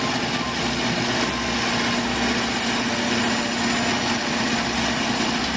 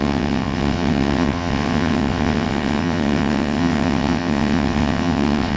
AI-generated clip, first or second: second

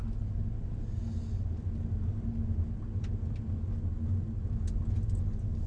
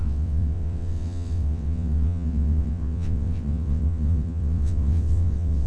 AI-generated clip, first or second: second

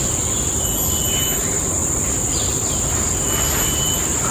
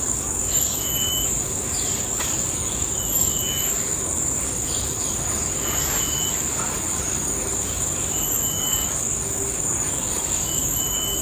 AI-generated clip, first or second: second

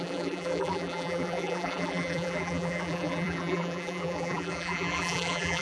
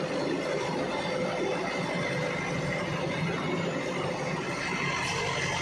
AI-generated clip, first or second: first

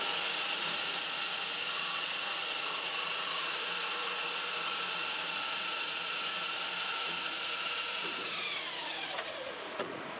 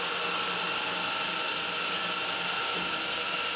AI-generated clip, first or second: first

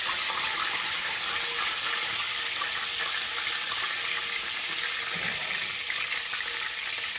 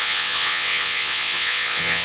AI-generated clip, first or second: second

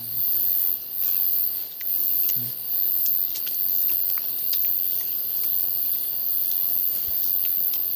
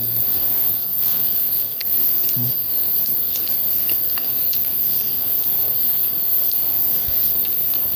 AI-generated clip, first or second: second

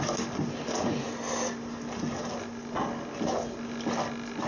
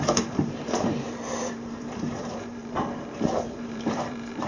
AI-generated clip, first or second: second